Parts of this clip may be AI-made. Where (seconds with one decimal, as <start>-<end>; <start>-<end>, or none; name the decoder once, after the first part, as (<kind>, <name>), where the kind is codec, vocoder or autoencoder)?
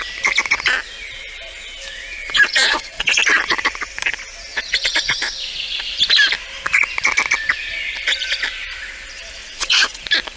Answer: 2.2-3.2 (vocoder, Vocos); 4.5-5.9; 9.4-10.0